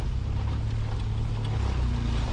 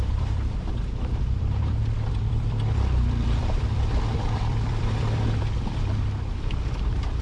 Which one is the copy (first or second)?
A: second